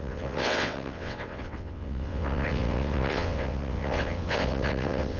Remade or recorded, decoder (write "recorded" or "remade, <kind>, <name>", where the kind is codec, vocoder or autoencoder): remade, vocoder, WaveNeXt